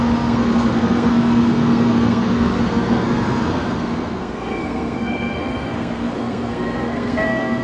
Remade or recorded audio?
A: remade